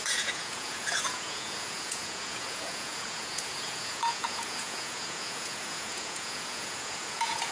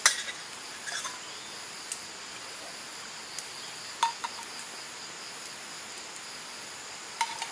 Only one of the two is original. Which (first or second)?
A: second